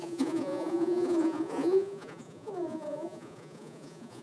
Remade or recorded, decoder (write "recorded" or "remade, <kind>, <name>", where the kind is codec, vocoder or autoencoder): remade, vocoder, Vocos